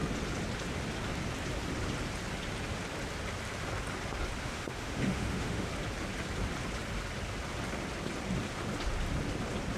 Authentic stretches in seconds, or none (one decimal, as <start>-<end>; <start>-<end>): 0.0-4.4; 5.7-9.8